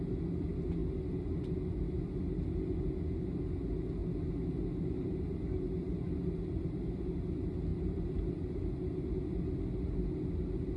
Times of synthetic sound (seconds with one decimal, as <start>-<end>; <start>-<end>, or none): none